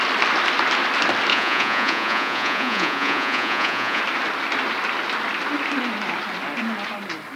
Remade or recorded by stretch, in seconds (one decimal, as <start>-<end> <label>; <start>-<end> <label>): 0.0-1.3 recorded; 1.3-4.0 remade; 4.0-7.4 recorded